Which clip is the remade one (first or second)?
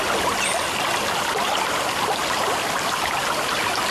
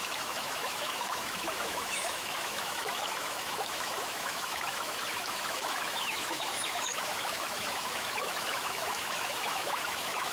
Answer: second